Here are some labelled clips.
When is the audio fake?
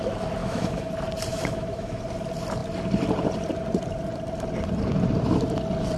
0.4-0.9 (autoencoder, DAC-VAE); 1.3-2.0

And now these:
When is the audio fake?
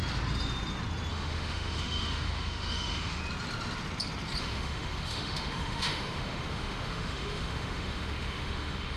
1.1-3.2 (autoencoder, DAC-VAE); 4.4-9.0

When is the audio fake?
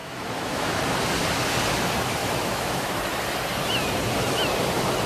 0.0-0.8 (autoencoder, DAC-VAE); 2.2-3.0